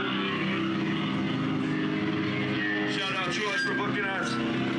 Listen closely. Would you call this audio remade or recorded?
recorded